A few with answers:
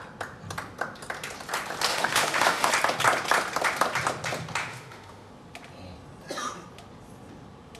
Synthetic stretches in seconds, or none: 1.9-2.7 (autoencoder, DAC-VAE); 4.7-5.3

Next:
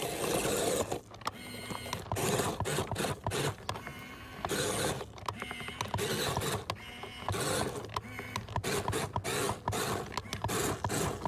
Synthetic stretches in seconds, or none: none

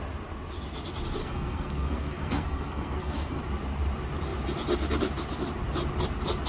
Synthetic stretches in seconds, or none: 1.2-3.4 (codec, SNAC)

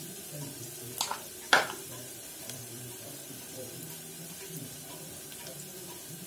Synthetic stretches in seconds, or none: 1.1-4.9 (vocoder, BigVGAN v2)

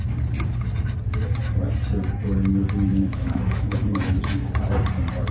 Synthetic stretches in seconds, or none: 2.9-4.0 (autoencoder, DAC-VAE)

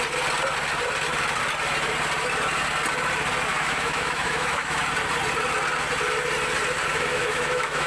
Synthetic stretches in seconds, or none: 3.5-4.9 (autoencoder, DAC-VAE); 6.9-7.9